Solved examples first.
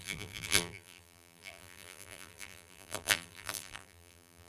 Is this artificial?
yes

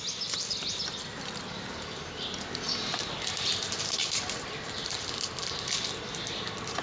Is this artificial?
no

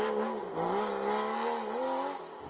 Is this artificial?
no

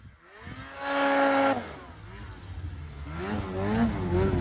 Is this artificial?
no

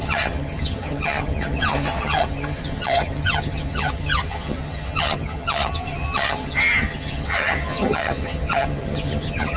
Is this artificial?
yes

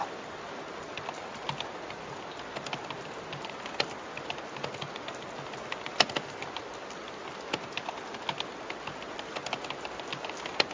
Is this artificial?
no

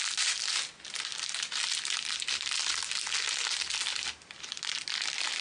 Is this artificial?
no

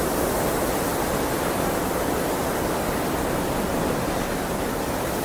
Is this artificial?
no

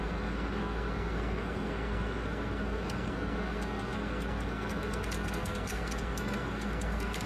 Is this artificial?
yes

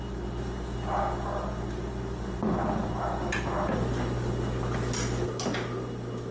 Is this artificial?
no